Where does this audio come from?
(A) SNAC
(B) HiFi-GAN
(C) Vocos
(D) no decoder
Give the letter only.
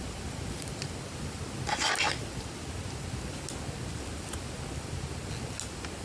D